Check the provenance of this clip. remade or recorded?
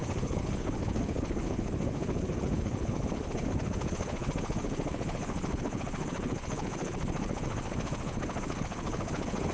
remade